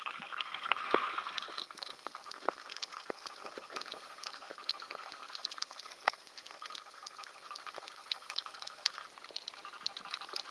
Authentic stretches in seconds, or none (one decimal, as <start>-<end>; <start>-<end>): 9.0-10.5